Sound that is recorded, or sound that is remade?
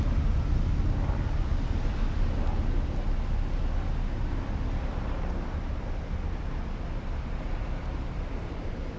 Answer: recorded